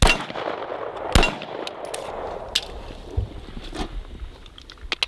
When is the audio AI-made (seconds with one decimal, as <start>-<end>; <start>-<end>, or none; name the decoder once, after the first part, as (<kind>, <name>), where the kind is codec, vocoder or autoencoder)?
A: none